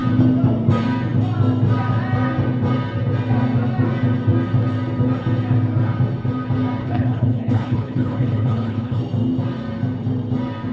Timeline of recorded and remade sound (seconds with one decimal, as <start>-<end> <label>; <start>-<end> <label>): 0.0-6.8 recorded; 6.8-9.0 remade; 9.0-10.7 recorded